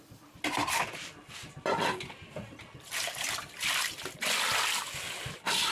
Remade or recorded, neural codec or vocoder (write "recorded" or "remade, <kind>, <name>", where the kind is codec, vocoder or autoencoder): recorded